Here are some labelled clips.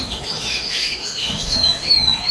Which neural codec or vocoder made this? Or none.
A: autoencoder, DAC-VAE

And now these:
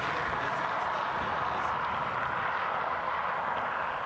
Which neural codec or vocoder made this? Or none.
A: none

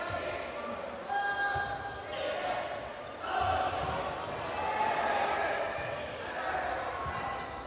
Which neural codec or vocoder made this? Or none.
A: none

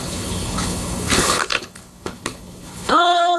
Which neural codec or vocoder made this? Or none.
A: codec, HILCodec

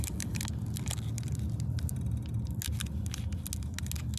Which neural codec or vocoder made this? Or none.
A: none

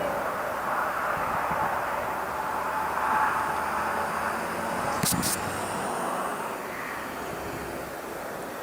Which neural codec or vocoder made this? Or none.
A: none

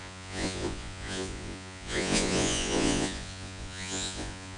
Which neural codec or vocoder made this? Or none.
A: vocoder, Vocos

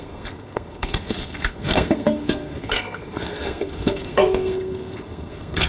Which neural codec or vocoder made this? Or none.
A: codec, SNAC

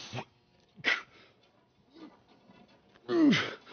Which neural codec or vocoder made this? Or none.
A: none